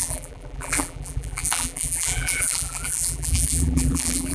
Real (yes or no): no